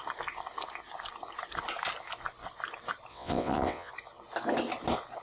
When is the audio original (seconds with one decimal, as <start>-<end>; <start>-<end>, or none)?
0.0-3.1; 3.9-5.2